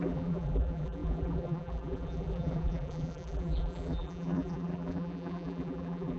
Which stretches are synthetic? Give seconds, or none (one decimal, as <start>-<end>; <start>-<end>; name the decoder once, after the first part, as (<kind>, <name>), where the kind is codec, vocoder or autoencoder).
0.0-6.2 (vocoder, BigVGAN v2)